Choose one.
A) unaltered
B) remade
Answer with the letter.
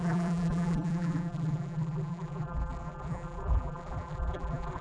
B